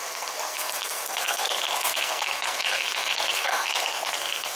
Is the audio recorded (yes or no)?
no